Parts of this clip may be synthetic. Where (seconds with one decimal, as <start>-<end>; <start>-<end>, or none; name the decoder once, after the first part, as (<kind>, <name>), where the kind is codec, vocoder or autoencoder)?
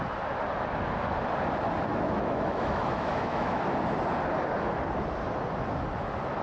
1.9-3.6 (autoencoder, DAC-VAE)